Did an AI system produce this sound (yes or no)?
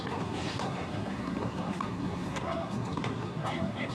yes